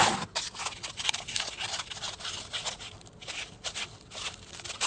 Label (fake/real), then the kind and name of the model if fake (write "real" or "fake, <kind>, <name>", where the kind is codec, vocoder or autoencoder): real